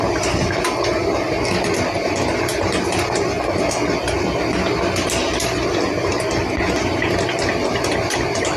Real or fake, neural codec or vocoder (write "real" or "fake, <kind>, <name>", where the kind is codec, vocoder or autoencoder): real